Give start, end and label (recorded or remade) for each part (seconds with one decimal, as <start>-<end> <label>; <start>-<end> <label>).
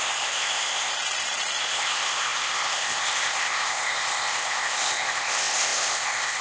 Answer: 0.0-0.9 remade; 0.9-1.6 recorded; 1.6-6.4 remade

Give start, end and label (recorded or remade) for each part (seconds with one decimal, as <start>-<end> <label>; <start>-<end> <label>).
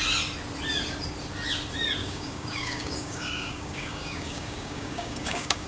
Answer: 0.0-2.0 recorded; 2.0-5.7 remade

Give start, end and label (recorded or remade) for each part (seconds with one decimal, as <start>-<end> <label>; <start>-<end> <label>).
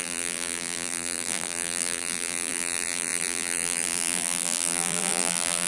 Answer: 0.0-5.7 remade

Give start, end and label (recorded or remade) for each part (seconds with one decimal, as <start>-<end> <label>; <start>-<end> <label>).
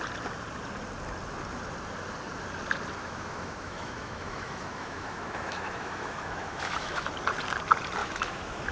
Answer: 0.0-3.0 recorded; 3.0-7.1 remade; 7.1-8.0 recorded; 8.0-8.7 remade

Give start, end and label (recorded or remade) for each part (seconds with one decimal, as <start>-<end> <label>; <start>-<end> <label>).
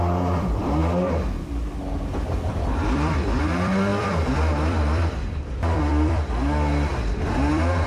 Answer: 0.0-0.8 remade; 0.8-1.8 recorded; 1.8-7.9 remade